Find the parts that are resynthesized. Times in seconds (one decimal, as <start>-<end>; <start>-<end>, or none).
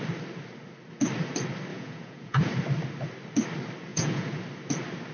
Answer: 1.7-2.5; 3.9-4.4